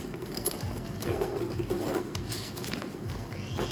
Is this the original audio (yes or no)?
no